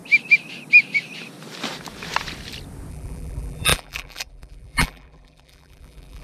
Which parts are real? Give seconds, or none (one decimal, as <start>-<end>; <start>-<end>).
0.0-2.9